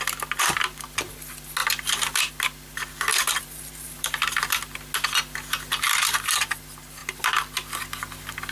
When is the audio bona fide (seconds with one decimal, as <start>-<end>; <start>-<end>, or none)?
0.0-1.6; 2.3-3.1; 4.6-8.5